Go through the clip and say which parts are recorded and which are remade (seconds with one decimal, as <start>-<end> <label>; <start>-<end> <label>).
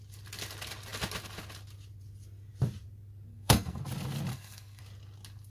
0.0-3.3 recorded; 3.3-3.8 remade; 3.8-4.3 recorded; 4.3-4.8 remade; 4.8-5.5 recorded